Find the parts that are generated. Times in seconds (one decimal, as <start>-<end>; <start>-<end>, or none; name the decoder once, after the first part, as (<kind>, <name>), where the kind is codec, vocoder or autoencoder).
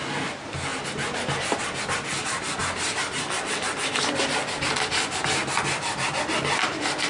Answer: none